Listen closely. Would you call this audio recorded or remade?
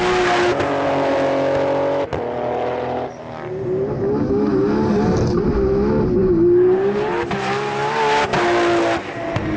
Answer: recorded